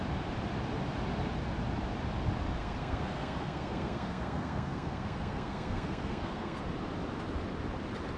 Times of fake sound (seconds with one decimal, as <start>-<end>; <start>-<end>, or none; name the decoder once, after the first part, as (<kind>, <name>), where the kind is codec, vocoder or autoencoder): 2.6-6.6 (codec, SNAC)